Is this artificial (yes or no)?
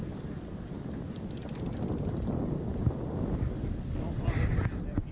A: no